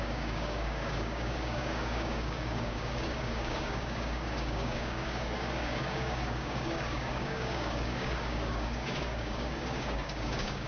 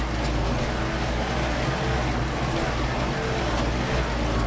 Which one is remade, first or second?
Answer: first